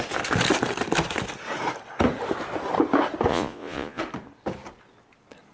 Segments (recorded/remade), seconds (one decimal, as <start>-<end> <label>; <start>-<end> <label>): 0.0-3.3 recorded; 3.3-4.0 remade; 4.0-5.5 recorded